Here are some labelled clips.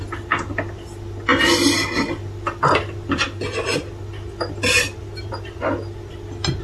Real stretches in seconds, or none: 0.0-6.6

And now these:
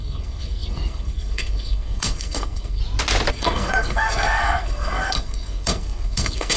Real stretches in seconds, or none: 2.8-3.3

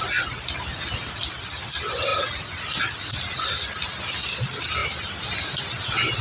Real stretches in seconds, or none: 0.0-6.2